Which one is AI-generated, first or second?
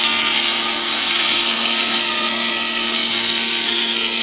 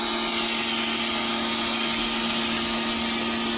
first